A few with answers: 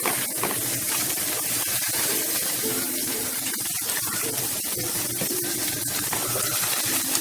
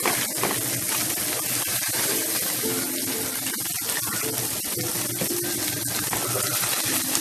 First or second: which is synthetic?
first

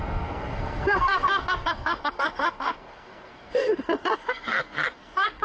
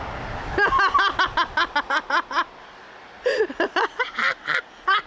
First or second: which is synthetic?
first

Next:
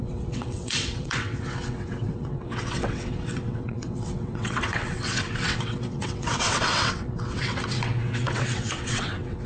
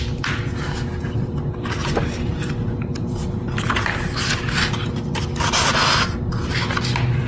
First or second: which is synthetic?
first